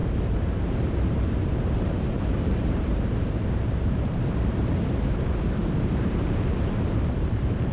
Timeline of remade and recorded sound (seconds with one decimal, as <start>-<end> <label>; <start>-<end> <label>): 0.0-0.9 recorded; 0.9-7.7 remade